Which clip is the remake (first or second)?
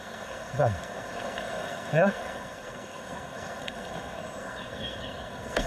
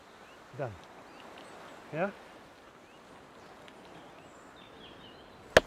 first